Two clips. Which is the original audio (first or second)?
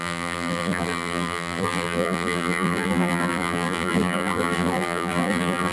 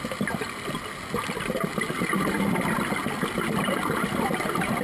second